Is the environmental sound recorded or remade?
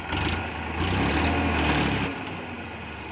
recorded